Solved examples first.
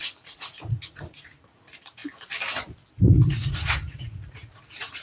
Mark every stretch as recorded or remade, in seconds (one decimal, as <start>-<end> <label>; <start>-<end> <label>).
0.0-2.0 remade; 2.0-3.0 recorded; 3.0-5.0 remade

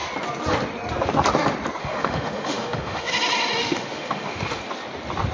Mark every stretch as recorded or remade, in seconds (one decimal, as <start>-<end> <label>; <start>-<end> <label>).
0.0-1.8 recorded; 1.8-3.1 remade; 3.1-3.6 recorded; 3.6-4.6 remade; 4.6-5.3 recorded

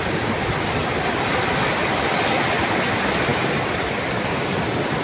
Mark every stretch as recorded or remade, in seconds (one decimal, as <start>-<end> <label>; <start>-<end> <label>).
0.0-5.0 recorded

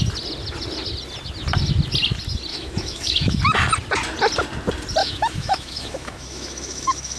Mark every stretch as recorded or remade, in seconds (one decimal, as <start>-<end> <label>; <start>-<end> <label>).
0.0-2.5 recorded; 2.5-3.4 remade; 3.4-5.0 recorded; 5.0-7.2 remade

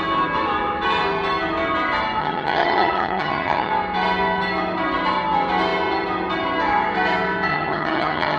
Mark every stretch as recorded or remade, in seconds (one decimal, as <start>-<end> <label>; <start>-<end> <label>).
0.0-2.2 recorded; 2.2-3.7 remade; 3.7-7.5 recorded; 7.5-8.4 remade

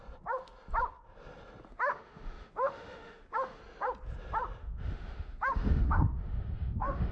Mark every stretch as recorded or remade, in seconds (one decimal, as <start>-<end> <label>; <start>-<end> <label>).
0.0-1.7 recorded; 1.7-3.6 remade; 3.6-4.6 recorded; 4.6-7.1 remade